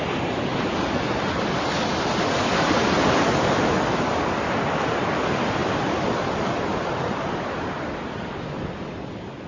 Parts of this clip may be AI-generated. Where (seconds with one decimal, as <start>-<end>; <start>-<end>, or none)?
none